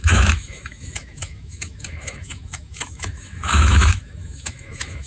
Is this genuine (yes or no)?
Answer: no